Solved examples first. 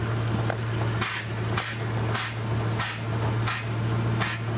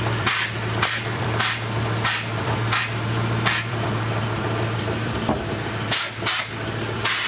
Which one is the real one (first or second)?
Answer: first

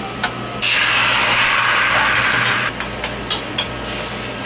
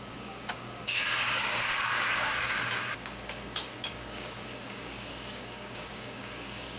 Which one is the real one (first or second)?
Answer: first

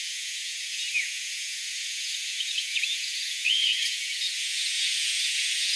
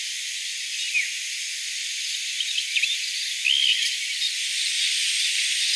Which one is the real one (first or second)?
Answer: second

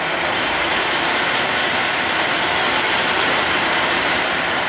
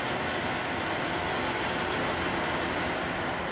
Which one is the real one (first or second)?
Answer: second